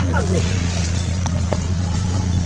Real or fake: fake